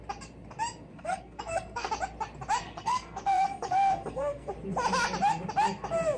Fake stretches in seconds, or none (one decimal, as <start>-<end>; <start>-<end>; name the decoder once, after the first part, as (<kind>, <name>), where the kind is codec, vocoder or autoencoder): 0.9-1.9 (codec, SNAC); 2.6-4.5